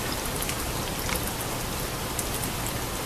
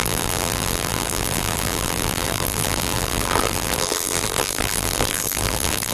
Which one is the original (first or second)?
first